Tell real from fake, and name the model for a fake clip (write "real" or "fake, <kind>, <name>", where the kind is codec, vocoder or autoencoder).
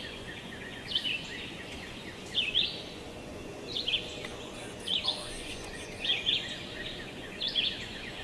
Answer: fake, vocoder, Vocos